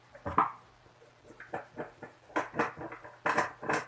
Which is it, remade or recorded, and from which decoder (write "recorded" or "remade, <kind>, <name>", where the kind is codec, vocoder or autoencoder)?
recorded